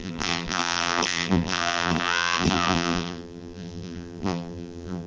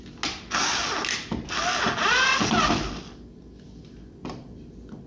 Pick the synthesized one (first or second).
first